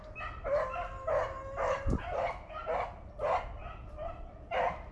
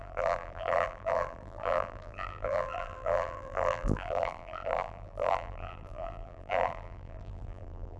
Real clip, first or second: first